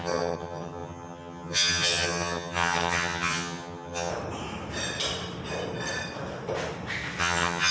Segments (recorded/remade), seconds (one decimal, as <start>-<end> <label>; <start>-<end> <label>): 0.0-4.1 remade; 4.1-7.2 recorded; 7.2-7.7 remade